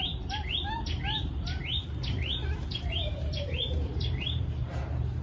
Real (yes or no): no